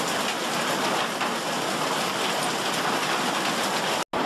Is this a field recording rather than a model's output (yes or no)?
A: yes